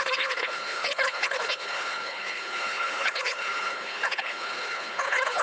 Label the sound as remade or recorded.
remade